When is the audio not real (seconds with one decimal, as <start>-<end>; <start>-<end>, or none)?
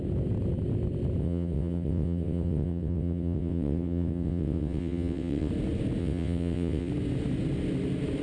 1.2-5.5; 6.0-6.9